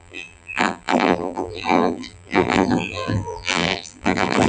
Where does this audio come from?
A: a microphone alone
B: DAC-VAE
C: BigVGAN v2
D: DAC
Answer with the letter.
C